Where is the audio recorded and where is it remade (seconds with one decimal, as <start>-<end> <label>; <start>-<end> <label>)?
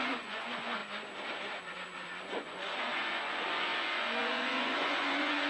0.0-0.8 remade; 0.8-1.6 recorded; 1.6-5.5 remade